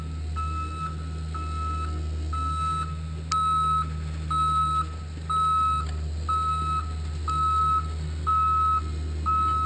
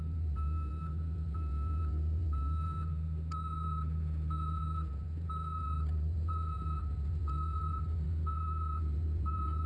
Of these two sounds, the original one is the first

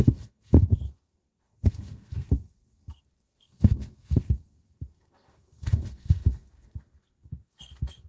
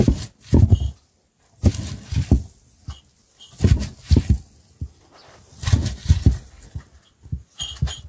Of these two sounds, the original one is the second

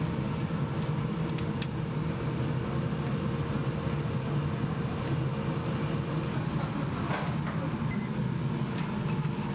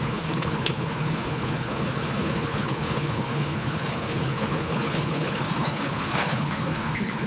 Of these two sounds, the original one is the first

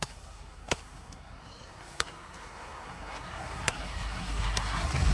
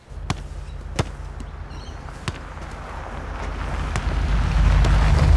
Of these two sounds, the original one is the second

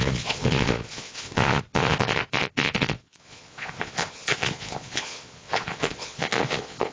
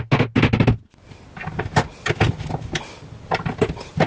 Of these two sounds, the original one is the second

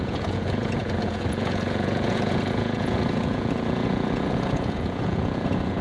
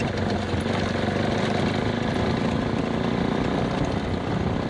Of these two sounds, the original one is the second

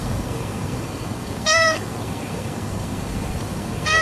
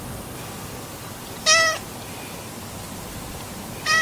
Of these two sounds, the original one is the second